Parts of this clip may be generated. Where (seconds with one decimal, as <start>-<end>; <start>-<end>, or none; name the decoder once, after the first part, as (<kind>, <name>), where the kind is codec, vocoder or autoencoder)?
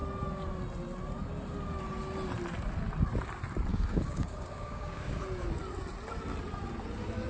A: 3.7-5.2 (codec, DAC)